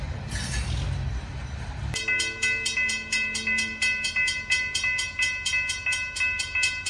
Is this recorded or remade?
recorded